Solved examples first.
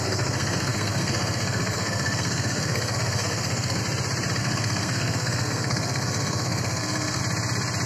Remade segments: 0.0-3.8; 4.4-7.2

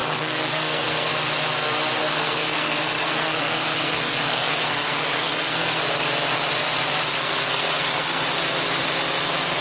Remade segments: 0.0-1.1; 2.0-5.8; 7.1-8.2

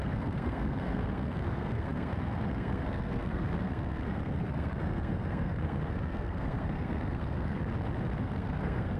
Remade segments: 0.0-7.6; 8.2-9.0

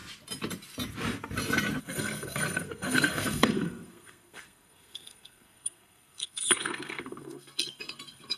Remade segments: 1.8-8.4

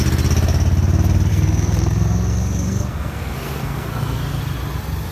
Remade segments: 1.3-4.4

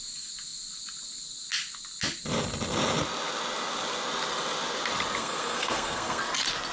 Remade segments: 5.2-6.2